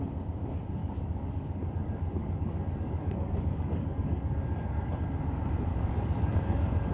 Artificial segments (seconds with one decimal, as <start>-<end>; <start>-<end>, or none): 0.8-4.9; 5.7-6.9